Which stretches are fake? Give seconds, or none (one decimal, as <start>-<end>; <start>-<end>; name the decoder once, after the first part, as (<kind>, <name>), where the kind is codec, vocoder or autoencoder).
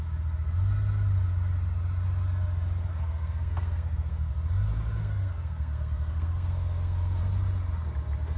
2.9-4.3 (codec, SNAC); 5.0-7.2